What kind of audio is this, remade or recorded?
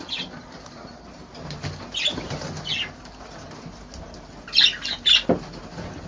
recorded